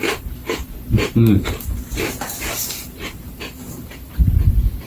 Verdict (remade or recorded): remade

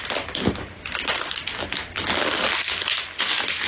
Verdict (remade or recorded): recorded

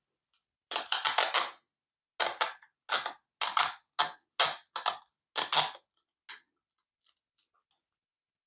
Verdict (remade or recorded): recorded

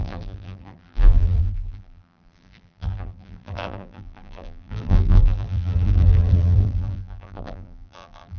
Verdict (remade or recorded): remade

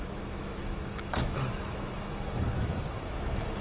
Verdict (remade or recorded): remade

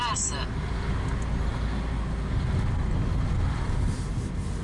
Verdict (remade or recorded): recorded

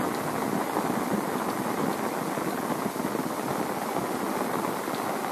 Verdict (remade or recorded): recorded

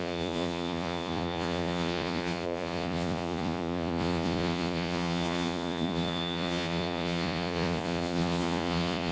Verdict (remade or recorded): remade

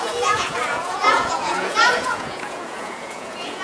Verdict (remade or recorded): remade